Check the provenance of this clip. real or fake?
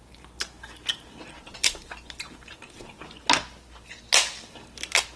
real